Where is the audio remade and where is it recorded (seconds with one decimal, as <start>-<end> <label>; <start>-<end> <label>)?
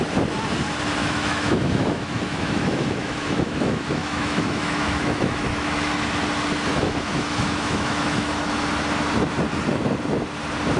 0.0-1.0 recorded; 1.0-5.9 remade; 5.9-6.7 recorded; 6.7-8.3 remade; 8.3-10.8 recorded